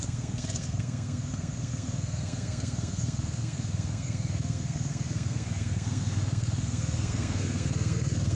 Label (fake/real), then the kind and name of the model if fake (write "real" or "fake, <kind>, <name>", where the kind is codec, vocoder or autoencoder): fake, codec, SNAC